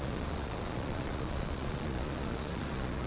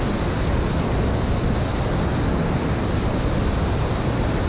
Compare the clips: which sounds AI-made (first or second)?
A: first